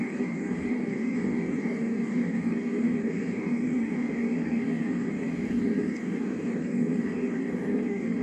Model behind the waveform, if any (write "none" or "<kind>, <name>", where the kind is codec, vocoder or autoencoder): codec, DAC